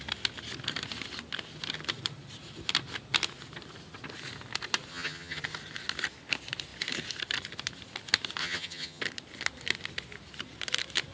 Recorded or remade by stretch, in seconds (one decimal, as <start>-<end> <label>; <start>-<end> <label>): 0.0-4.9 recorded; 4.9-5.4 remade; 5.4-8.4 recorded; 8.4-9.0 remade; 9.0-11.1 recorded